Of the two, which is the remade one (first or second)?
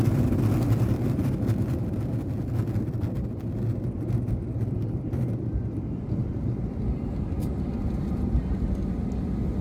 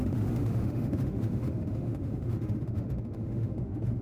second